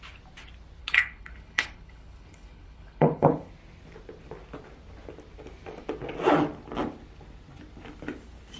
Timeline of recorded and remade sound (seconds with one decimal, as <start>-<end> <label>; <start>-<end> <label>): 0.0-0.8 recorded; 0.8-3.5 remade; 3.5-8.6 recorded